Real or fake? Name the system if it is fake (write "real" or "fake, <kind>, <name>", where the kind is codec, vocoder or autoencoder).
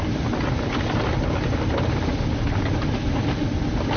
real